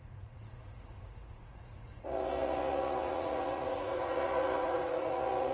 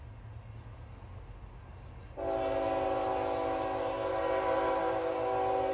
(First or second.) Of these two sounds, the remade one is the first